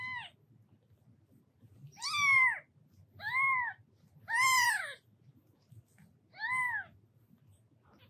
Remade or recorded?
recorded